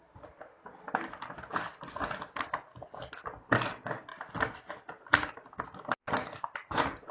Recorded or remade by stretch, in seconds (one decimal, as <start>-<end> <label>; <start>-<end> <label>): 0.0-7.1 recorded